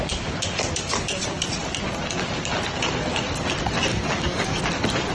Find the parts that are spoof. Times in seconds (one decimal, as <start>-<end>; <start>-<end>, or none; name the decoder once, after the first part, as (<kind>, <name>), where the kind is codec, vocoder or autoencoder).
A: 3.9-4.6 (codec, DAC)

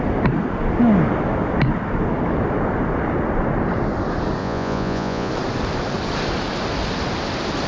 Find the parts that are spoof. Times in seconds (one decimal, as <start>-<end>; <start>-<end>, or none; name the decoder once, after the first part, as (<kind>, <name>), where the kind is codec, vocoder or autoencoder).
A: 4.4-5.3 (vocoder, Vocos)

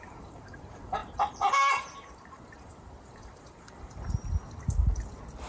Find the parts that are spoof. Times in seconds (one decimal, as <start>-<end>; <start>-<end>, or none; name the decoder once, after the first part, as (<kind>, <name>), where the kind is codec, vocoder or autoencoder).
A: 0.0-4.4 (vocoder, BigVGAN v2)